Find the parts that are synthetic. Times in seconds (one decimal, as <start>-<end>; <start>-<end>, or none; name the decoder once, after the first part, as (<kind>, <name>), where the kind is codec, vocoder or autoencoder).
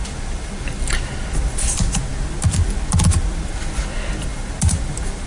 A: none